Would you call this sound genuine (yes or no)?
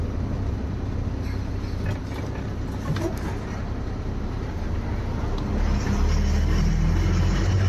yes